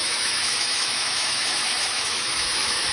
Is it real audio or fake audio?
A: fake